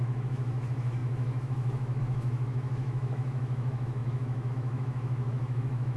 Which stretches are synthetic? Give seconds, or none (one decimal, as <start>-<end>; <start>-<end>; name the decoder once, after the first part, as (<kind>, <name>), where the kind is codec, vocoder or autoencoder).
0.0-6.0 (autoencoder, DAC-VAE)